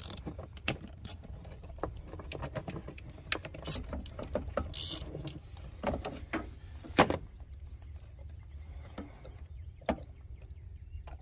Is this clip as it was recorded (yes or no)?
yes